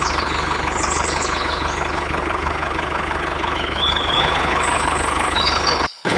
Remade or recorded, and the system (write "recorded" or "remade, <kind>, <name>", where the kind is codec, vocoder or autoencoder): remade, codec, HILCodec